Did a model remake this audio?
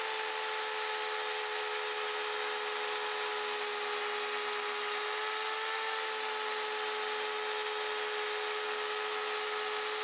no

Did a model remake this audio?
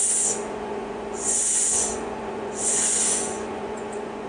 yes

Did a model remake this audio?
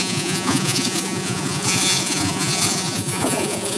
yes